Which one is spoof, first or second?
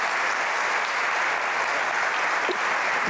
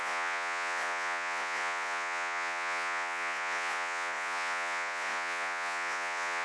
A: second